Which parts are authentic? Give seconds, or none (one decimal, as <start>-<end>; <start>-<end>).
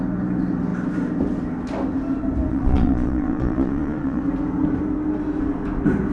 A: 0.0-2.5; 4.2-6.1